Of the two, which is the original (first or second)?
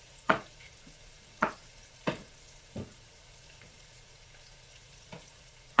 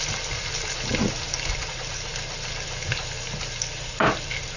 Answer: second